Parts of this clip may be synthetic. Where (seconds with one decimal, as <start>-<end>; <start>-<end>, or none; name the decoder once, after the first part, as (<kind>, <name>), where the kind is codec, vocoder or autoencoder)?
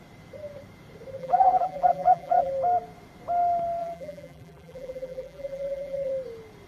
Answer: 1.2-2.5 (vocoder, BigVGAN v2); 3.8-6.1